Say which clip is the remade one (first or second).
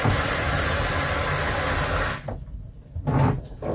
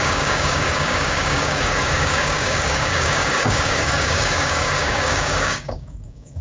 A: second